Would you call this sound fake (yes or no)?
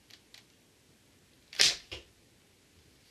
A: no